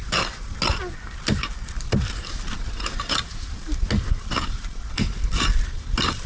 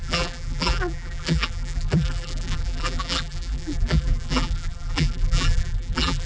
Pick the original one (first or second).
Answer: first